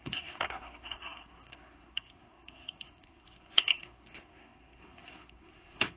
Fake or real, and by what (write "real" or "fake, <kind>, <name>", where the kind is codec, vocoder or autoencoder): fake, codec, SNAC